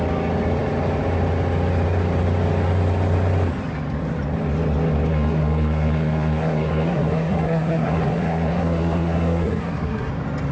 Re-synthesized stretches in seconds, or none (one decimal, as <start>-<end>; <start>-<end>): 5.1-10.1